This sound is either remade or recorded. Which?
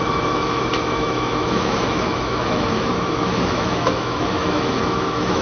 remade